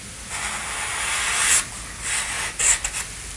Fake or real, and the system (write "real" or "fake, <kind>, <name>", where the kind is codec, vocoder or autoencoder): real